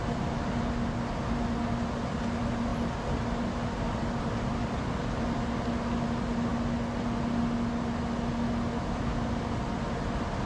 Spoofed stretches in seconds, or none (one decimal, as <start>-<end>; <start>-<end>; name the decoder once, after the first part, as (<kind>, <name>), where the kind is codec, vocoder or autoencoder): none